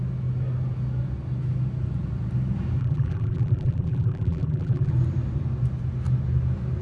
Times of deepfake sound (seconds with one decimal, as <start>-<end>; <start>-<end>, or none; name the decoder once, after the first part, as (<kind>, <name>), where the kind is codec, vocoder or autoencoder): 2.8-4.9 (vocoder, BigVGAN v2)